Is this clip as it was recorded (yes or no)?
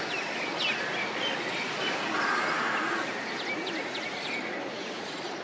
yes